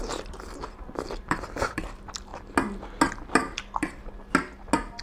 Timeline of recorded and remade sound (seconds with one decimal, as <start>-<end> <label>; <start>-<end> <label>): 0.0-2.3 remade; 2.3-3.1 recorded; 3.1-3.8 remade; 3.8-5.0 recorded